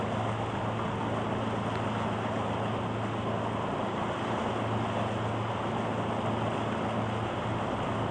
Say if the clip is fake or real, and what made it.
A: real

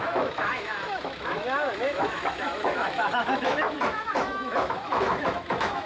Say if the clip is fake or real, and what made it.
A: fake, autoencoder, DAC-VAE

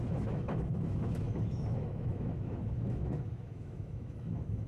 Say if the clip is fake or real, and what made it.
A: fake, autoencoder, DAC-VAE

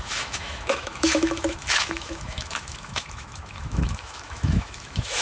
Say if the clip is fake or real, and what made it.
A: fake, autoencoder, DAC-VAE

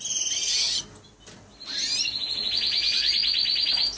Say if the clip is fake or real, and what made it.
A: real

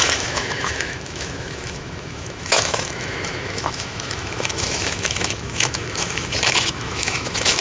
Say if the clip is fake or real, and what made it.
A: fake, autoencoder, DAC-VAE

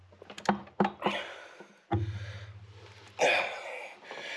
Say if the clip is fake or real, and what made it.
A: real